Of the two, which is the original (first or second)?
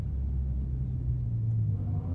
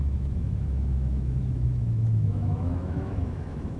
first